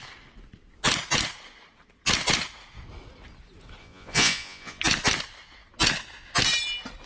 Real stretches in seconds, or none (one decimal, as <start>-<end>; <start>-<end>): 0.0-3.8; 4.8-7.1